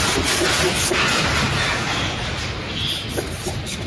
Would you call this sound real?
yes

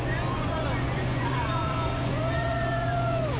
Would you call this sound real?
no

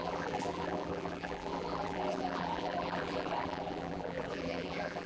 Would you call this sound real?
no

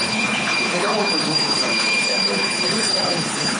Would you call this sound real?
no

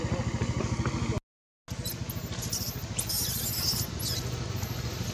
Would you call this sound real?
yes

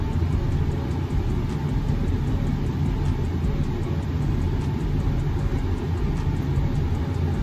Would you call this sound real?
yes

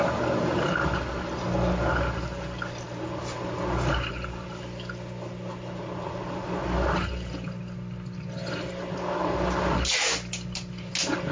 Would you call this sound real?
yes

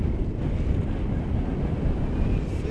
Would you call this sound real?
yes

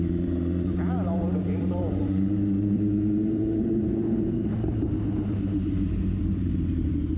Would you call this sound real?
no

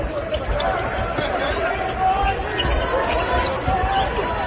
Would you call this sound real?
yes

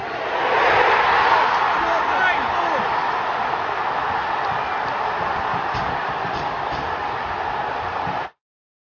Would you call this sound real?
yes